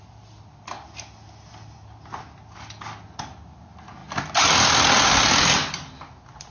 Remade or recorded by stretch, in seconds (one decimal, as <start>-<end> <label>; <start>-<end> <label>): 0.0-6.5 recorded